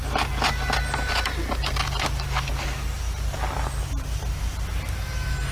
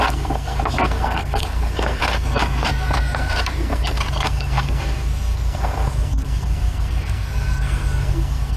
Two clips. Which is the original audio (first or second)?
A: first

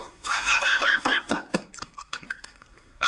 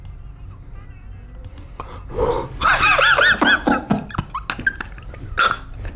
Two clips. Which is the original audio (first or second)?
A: second